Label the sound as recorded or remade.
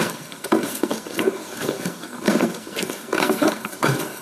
remade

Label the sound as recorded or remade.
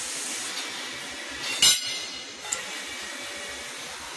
recorded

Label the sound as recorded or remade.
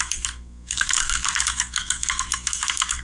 remade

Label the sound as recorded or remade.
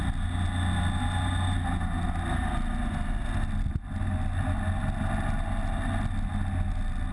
recorded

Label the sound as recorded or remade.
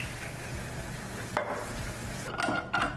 recorded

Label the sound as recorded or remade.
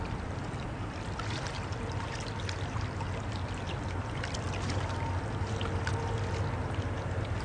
recorded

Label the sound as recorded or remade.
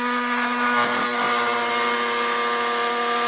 recorded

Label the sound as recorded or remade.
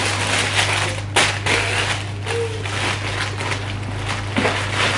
recorded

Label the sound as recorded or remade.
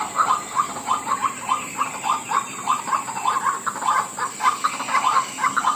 recorded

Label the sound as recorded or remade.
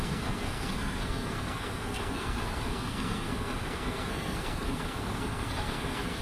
remade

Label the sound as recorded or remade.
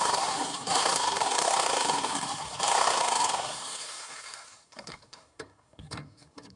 remade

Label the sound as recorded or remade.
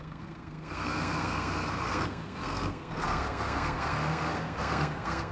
remade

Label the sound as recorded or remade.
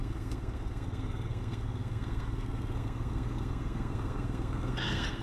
remade